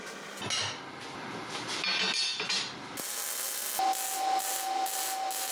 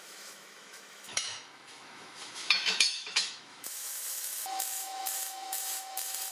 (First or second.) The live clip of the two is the first